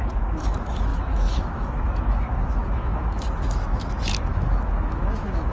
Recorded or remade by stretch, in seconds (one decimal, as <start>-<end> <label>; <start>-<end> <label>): 0.0-5.5 remade